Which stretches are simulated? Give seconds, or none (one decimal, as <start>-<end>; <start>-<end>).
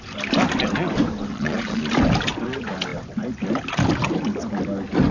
1.3-1.8